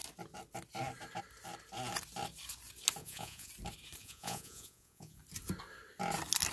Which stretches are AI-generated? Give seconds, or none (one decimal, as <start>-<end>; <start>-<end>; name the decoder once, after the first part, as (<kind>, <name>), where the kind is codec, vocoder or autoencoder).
3.0-3.5 (vocoder, Vocos); 4.0-5.2